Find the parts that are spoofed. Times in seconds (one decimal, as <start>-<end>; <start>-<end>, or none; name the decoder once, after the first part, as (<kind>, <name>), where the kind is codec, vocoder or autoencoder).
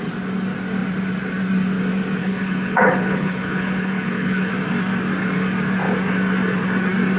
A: 2.2-4.5 (codec, HILCodec)